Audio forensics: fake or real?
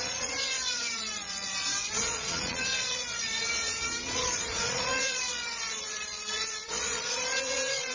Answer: fake